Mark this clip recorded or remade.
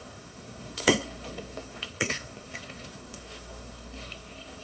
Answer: remade